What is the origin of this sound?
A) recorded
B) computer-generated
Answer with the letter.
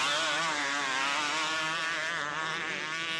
A